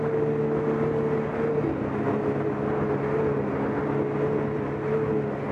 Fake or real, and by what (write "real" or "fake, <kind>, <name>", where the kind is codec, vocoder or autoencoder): real